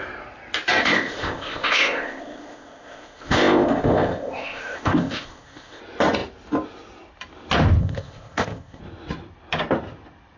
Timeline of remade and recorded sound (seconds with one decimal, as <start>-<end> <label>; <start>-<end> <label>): 0.0-0.8 recorded; 0.8-5.8 remade; 5.8-7.8 recorded; 7.8-8.8 remade; 8.8-10.4 recorded